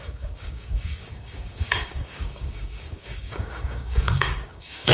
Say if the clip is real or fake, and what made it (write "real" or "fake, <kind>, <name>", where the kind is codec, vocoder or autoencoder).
fake, codec, DAC